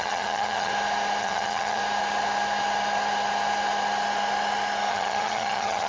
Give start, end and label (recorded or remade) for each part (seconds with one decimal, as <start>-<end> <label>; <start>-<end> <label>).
0.0-0.7 remade; 0.7-1.2 recorded; 1.2-1.8 remade; 1.8-4.9 recorded; 4.9-5.9 remade